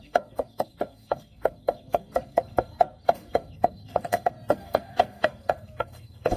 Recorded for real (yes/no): no